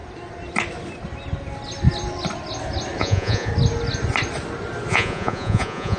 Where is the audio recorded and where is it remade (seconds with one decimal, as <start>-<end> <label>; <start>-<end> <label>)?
0.0-3.0 recorded; 3.0-3.5 remade; 3.5-4.9 recorded; 4.9-6.0 remade